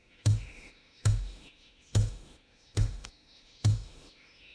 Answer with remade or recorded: remade